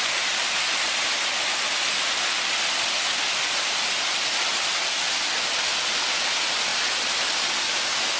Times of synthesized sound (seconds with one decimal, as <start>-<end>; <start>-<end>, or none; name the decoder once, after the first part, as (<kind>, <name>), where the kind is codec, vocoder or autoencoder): none